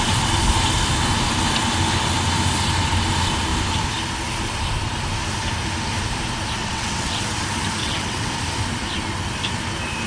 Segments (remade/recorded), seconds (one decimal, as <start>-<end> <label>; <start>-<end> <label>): 0.0-6.6 recorded; 6.6-7.2 remade; 7.2-7.8 recorded; 7.8-8.3 remade; 8.3-10.1 recorded

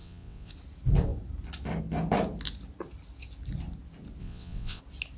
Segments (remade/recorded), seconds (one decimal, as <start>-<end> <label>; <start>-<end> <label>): 0.0-0.5 remade; 0.5-4.2 recorded; 4.2-4.8 remade; 4.8-5.2 recorded

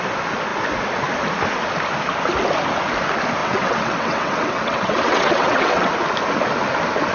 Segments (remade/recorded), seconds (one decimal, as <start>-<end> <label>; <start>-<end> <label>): 0.0-3.4 recorded; 3.4-5.9 remade; 5.9-7.1 recorded

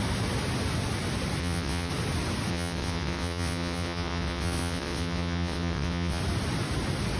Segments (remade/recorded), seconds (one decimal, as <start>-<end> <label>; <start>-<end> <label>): 0.0-1.4 recorded; 1.4-1.9 remade; 1.9-2.5 recorded; 2.5-6.2 remade; 6.2-7.2 recorded

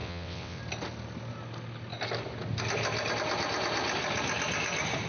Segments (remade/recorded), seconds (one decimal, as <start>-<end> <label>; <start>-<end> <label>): 0.0-0.6 remade; 0.6-5.1 recorded

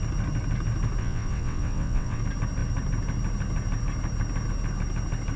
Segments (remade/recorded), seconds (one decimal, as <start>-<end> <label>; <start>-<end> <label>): 0.0-1.0 recorded; 1.0-2.2 remade; 2.2-5.4 recorded